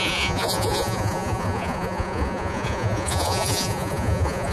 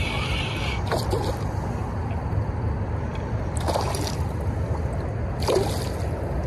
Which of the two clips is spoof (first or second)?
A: first